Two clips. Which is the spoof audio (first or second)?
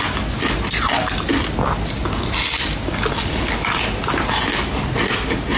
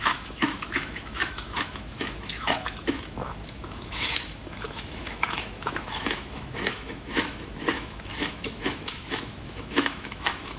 second